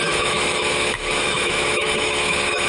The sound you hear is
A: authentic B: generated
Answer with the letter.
B